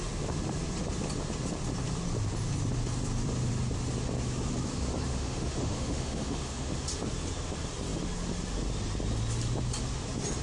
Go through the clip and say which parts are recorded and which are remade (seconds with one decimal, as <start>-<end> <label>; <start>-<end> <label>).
0.0-5.1 recorded; 5.1-6.7 remade; 6.7-10.4 recorded